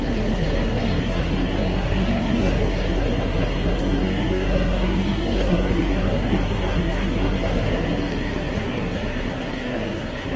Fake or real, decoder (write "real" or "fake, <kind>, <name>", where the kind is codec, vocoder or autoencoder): fake, codec, SNAC